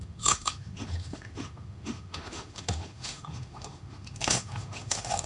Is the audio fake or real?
fake